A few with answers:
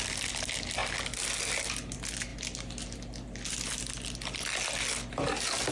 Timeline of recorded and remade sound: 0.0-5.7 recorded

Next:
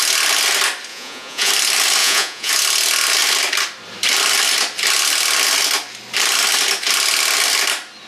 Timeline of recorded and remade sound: 0.0-0.9 recorded; 0.9-1.5 remade; 1.5-2.0 recorded; 2.0-2.5 remade; 2.5-8.1 recorded

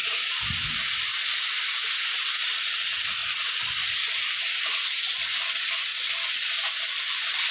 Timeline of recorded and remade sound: 0.0-2.4 recorded; 2.4-5.9 remade; 5.9-7.1 recorded; 7.1-7.5 remade

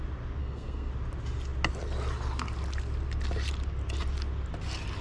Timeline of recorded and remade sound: 0.0-0.4 recorded; 0.4-0.9 remade; 0.9-5.0 recorded

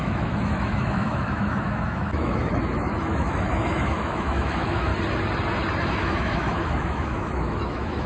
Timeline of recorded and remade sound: 0.0-4.9 remade; 4.9-5.9 recorded; 5.9-8.1 remade

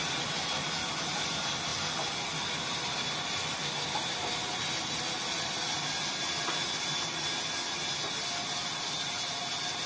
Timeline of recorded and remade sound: 0.0-9.9 recorded